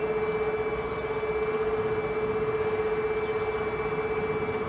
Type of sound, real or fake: real